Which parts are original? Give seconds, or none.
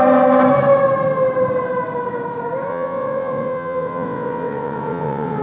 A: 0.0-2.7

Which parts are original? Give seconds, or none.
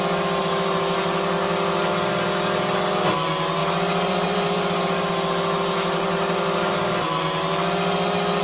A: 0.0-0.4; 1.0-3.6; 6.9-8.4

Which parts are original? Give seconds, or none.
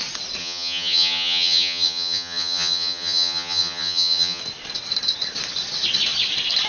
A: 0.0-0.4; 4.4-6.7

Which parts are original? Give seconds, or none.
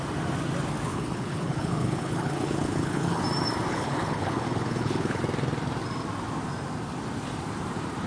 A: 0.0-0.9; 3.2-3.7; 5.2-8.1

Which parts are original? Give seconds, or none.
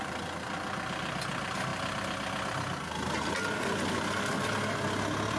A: 0.0-5.4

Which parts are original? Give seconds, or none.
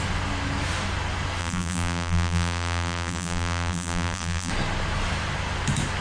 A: 0.0-1.4; 4.5-6.0